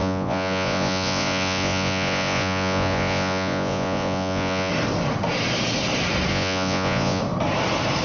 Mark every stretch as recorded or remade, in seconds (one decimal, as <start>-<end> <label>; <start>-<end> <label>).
0.0-4.7 remade; 4.7-6.3 recorded; 6.3-7.2 remade; 7.2-8.0 recorded